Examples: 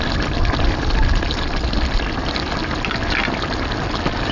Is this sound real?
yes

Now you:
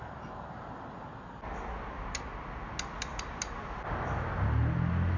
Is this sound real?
yes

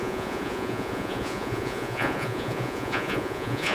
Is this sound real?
no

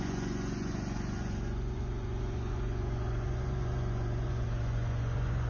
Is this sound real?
no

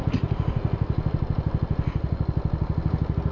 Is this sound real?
yes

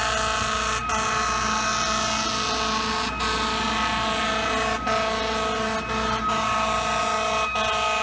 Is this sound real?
yes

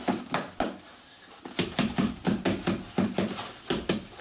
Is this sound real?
yes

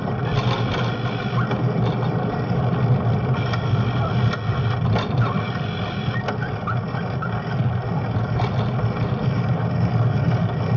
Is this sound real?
yes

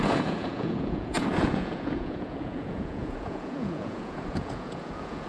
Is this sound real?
no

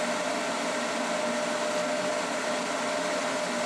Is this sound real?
yes